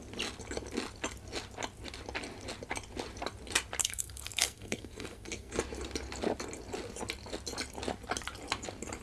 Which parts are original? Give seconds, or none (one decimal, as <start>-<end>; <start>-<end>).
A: 0.0-3.8; 5.5-9.0